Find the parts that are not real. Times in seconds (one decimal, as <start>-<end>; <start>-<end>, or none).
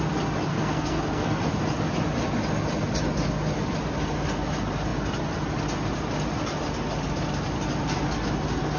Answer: 0.5-1.4